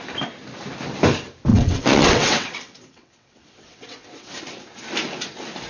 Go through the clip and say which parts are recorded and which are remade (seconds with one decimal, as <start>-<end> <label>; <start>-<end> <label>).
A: 0.0-1.5 recorded; 1.5-4.4 remade; 4.4-5.7 recorded